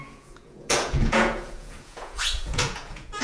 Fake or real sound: fake